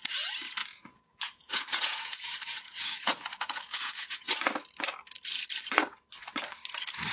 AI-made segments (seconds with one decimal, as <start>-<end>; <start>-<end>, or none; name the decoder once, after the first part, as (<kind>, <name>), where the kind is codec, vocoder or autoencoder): 0.6-4.3 (vocoder, Vocos)